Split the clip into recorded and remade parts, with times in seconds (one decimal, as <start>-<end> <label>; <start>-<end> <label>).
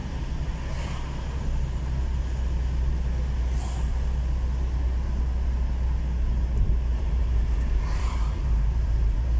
0.0-6.9 recorded; 6.9-9.4 remade